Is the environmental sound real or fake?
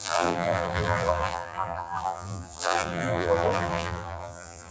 fake